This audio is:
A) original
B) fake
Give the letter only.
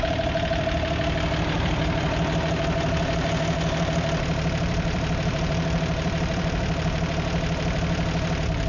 B